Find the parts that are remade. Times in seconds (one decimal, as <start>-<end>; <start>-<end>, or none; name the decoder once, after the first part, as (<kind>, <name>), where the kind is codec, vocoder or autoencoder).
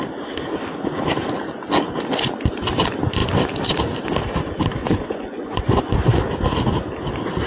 4.8-5.8 (vocoder, Vocos)